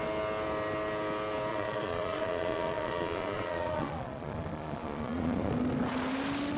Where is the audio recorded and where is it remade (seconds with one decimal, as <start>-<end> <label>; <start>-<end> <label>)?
0.0-1.5 recorded; 1.5-5.5 remade; 5.5-6.6 recorded